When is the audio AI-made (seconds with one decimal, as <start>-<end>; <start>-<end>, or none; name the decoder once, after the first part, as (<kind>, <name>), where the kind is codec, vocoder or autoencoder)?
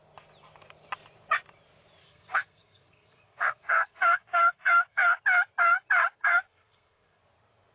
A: 2.0-5.2 (codec, SNAC); 6.2-7.2